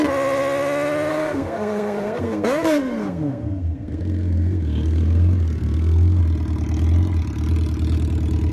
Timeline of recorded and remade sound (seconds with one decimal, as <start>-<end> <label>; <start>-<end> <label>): 0.0-1.1 recorded; 1.1-6.2 remade; 6.2-8.5 recorded